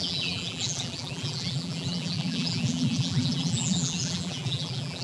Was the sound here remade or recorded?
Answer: remade